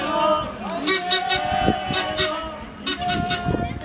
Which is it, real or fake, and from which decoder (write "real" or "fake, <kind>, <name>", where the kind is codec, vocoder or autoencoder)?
real